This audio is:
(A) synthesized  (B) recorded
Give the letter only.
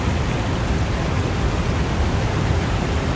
B